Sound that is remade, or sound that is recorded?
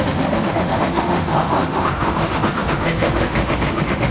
remade